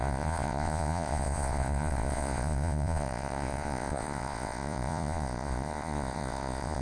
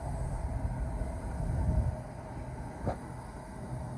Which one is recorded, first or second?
second